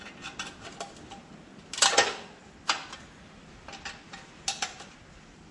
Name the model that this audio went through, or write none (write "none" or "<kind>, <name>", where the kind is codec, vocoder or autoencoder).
none